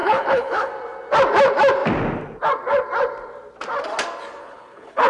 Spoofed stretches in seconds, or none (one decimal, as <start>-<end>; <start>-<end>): 0.0-0.7; 4.4-5.1